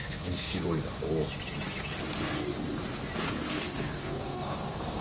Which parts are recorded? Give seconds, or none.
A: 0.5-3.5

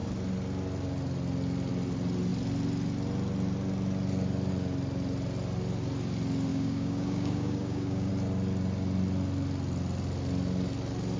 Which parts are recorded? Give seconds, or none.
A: 0.0-6.5; 8.1-11.2

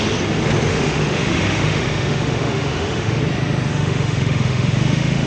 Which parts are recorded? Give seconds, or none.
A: 0.0-0.7; 3.2-3.7

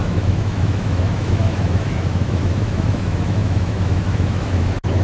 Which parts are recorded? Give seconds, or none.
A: none